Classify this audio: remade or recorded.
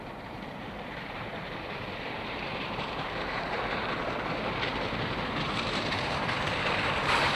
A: remade